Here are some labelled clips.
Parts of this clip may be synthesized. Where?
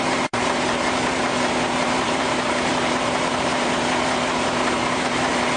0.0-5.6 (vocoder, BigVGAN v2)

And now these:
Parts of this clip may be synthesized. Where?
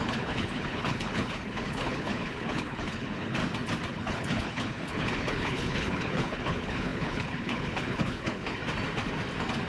0.0-3.4 (codec, HILCodec); 3.9-8.6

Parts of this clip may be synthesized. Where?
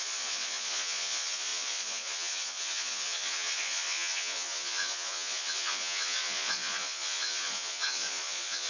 0.0-8.7 (vocoder, Vocos)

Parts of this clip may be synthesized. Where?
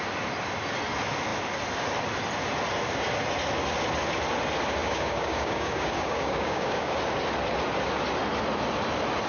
4.8-7.0 (codec, DAC)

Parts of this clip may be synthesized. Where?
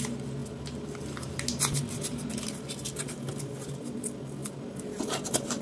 none